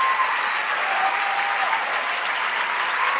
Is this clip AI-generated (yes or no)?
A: no